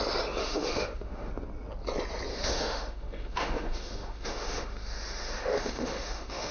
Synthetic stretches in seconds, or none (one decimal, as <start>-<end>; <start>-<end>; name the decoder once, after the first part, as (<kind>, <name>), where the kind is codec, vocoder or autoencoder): 0.4-1.3 (autoencoder, DAC-VAE); 2.3-6.5